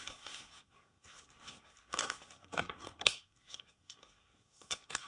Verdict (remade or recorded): remade